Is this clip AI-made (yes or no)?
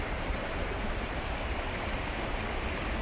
no